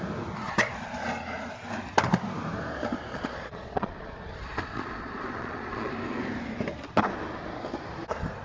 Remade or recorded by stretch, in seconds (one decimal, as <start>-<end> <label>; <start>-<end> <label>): 0.0-3.1 recorded; 3.1-5.9 remade; 5.9-8.4 recorded